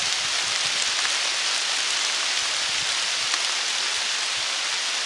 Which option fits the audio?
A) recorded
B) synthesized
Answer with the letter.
A